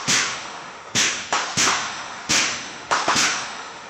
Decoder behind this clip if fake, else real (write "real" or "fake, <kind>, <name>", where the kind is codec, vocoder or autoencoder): fake, autoencoder, DAC-VAE